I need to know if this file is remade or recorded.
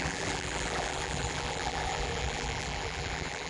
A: remade